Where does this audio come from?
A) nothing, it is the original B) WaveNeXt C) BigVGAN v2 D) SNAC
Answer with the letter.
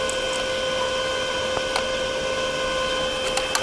A